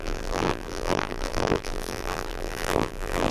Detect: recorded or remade remade